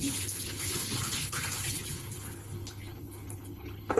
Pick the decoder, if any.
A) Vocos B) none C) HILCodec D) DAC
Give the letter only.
C